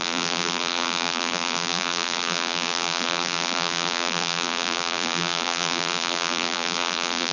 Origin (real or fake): fake